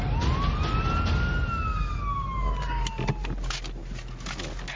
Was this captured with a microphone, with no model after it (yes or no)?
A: yes